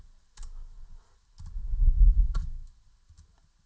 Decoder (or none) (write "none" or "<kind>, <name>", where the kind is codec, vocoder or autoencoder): none